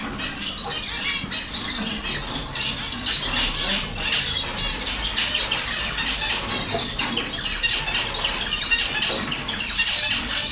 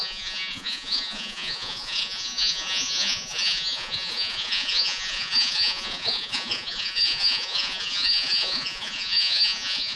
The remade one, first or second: second